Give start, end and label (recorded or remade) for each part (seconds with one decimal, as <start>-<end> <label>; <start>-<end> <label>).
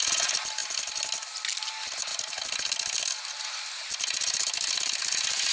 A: 0.0-5.5 recorded